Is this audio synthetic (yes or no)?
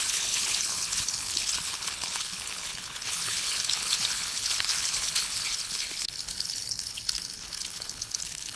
yes